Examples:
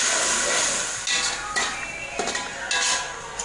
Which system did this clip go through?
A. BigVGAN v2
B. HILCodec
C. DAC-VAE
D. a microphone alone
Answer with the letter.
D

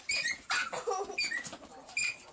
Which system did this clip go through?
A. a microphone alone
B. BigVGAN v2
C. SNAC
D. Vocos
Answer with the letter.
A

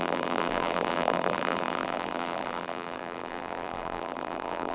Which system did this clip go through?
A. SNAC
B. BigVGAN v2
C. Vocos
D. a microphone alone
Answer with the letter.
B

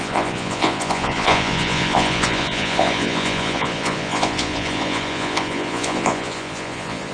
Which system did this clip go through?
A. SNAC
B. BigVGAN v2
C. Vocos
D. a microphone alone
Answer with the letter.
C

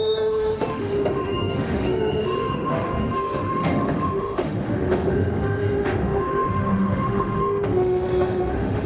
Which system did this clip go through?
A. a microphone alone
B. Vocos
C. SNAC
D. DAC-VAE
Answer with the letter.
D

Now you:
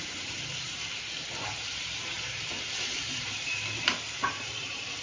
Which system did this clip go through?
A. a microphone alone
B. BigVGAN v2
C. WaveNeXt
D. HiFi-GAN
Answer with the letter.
B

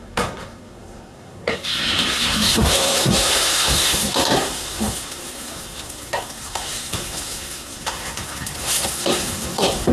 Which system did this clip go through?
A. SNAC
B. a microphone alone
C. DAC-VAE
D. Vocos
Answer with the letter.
A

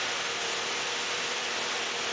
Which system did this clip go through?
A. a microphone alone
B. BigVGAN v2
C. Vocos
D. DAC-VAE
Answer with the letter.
A